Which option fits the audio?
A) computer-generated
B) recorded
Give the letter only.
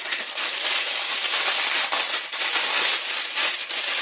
B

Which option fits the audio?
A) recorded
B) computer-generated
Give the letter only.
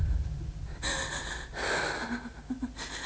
A